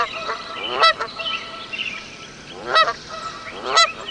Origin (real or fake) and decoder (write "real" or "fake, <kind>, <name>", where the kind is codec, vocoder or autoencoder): fake, vocoder, BigVGAN v2